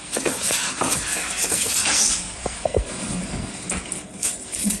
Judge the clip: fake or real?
fake